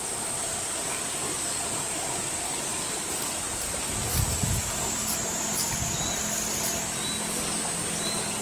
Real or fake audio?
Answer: real